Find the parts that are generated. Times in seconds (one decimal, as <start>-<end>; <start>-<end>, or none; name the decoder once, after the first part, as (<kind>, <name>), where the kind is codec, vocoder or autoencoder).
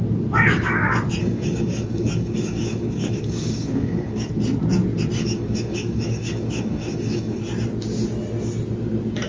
1.2-4.3 (codec, DAC); 5.2-7.4